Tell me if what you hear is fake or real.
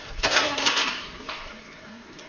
fake